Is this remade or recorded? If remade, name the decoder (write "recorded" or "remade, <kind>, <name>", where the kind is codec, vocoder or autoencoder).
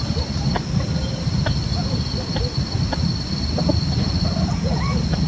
recorded